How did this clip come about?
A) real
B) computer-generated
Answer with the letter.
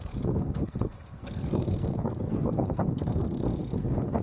B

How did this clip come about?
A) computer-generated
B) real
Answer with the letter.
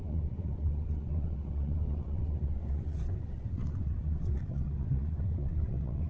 A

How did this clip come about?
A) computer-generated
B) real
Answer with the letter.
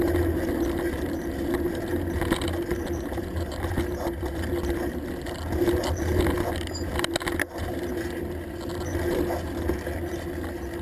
B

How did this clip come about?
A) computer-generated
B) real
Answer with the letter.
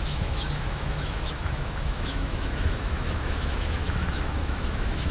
A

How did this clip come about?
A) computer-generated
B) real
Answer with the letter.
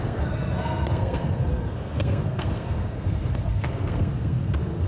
A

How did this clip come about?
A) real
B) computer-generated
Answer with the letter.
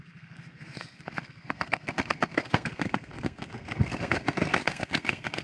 B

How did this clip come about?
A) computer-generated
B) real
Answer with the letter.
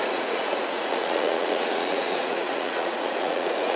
A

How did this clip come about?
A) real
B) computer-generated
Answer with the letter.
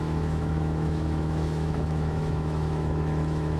B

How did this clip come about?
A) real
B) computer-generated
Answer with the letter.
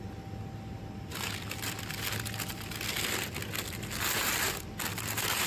A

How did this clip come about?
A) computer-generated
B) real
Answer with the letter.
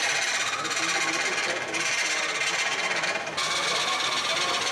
B